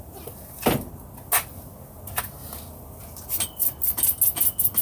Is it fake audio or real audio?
real